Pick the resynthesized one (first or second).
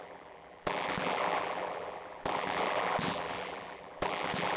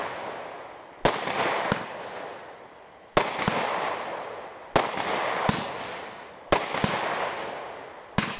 first